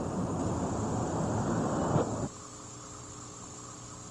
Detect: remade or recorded recorded